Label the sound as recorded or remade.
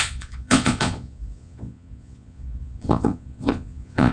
remade